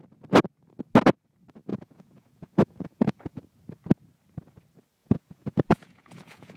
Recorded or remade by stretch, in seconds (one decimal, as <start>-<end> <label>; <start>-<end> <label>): 0.0-1.7 recorded; 1.7-3.4 remade; 3.4-5.0 recorded; 5.0-6.6 remade